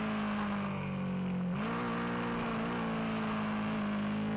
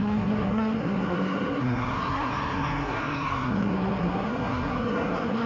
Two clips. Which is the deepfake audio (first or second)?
second